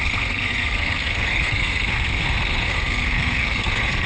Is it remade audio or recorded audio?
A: remade